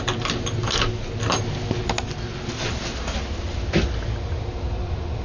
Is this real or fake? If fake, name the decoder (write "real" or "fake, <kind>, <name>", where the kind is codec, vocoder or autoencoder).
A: real